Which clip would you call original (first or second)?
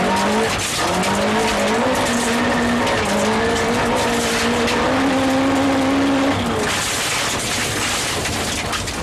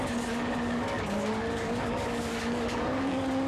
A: first